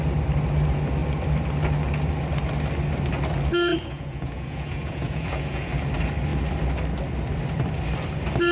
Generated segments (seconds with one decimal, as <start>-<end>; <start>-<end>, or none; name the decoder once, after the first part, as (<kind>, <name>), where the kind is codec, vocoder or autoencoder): 3.7-5.7 (vocoder, Vocos)